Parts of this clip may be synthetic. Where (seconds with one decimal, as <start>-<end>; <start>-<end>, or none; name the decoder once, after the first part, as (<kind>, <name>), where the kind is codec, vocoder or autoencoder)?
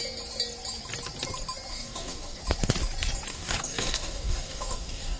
1.7-2.4 (codec, DAC); 3.3-5.2